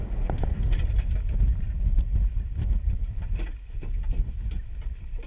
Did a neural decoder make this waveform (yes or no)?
no